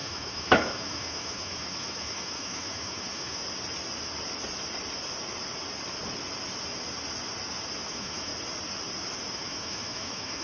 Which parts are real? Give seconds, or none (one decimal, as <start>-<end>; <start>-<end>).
3.4-7.9; 8.3-9.3